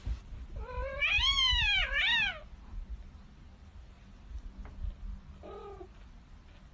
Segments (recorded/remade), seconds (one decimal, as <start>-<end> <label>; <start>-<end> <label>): 0.0-6.7 recorded